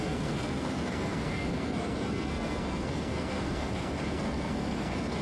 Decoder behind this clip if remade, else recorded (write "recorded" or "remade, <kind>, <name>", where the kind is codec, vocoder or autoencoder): remade, codec, SNAC